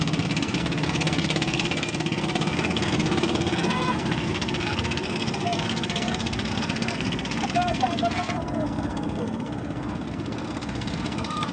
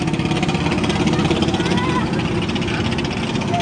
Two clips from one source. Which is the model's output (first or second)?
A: first